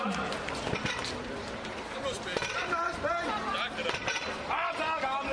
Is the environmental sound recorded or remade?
recorded